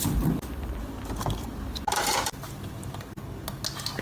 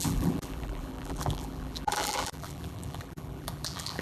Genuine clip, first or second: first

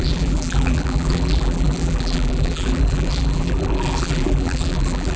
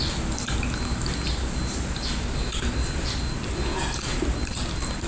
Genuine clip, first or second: second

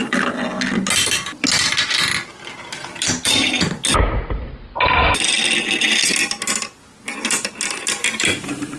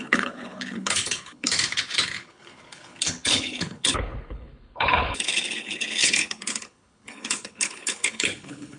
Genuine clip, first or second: first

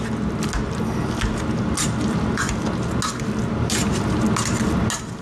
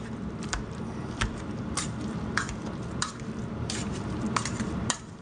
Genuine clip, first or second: first